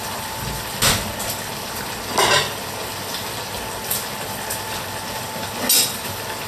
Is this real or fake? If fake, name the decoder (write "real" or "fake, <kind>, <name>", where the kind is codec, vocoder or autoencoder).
real